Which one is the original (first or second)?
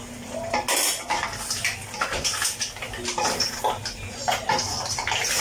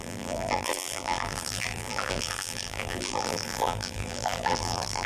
first